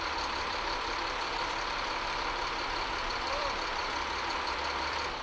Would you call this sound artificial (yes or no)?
yes